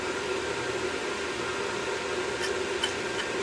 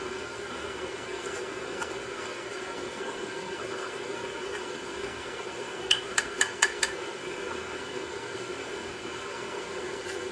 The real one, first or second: first